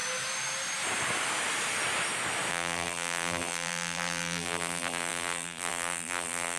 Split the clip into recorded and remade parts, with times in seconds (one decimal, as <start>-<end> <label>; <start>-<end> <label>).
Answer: 0.0-2.5 recorded; 2.5-6.6 remade